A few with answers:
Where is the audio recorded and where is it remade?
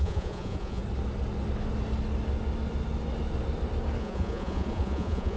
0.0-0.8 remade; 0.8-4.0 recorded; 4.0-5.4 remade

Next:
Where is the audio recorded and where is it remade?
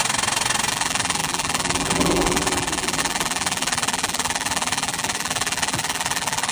0.0-0.7 recorded; 0.7-6.5 remade